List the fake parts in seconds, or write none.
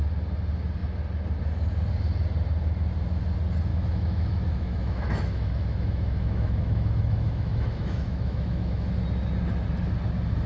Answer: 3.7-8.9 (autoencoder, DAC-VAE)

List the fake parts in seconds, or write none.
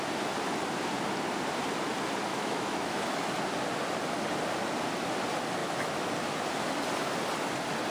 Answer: 2.3-3.3 (autoencoder, DAC-VAE); 5.6-6.1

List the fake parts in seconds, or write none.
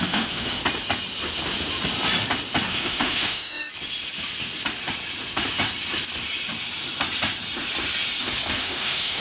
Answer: 0.0-0.6 (autoencoder, DAC-VAE); 2.7-3.7; 8.6-9.2